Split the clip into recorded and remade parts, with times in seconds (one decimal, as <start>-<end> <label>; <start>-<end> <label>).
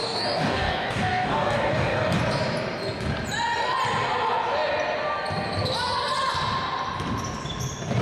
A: 0.0-2.2 remade; 2.2-8.0 recorded